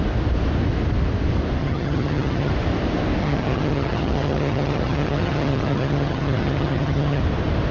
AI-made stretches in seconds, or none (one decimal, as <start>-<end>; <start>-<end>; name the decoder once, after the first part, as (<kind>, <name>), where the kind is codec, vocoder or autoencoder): 1.6-2.5 (vocoder, HiFi-GAN); 3.2-7.2

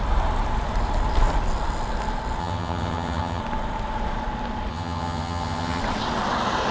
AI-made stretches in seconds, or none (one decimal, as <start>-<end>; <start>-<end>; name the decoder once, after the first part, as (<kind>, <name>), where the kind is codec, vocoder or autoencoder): 2.4-3.4 (vocoder, HiFi-GAN); 4.7-5.8

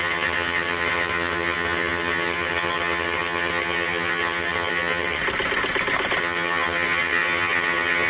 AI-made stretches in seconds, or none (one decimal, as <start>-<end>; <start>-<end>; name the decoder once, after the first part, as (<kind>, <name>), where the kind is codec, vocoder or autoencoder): 0.0-5.2 (vocoder, HiFi-GAN); 6.2-8.1

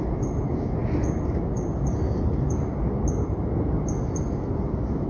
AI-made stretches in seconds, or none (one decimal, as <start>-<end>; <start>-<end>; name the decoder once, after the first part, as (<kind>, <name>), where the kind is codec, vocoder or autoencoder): none

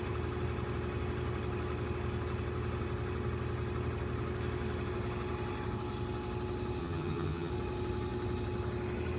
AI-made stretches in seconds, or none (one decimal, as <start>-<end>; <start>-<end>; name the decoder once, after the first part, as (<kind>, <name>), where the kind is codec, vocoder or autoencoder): 6.8-7.5 (vocoder, HiFi-GAN)

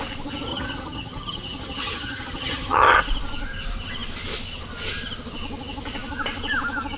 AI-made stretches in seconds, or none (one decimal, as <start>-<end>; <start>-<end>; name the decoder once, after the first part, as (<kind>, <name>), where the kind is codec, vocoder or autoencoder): 0.5-3.0 (vocoder, HiFi-GAN)